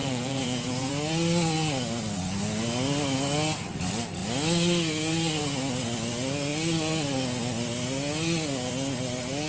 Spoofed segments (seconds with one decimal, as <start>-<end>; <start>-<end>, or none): 0.0-0.9